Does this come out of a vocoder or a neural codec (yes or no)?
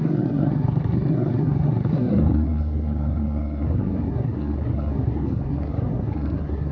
yes